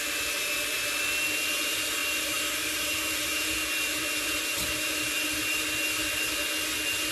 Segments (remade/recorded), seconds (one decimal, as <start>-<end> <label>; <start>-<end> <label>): 0.0-2.0 recorded; 2.0-6.3 remade; 6.3-7.1 recorded